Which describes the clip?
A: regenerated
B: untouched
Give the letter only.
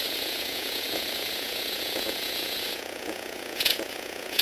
A